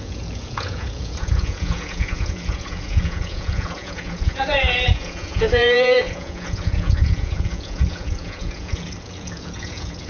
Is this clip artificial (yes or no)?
yes